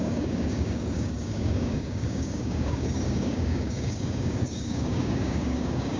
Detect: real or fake fake